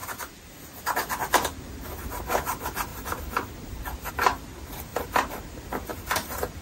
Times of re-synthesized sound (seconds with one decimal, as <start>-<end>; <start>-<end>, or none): 2.9-4.1; 4.9-5.5; 5.9-6.6